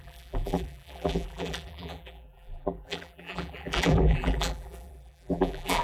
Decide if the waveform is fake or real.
fake